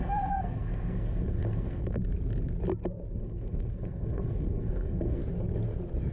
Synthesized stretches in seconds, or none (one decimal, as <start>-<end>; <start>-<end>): 0.0-2.0; 3.2-5.2